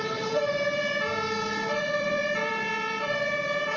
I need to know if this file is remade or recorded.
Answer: remade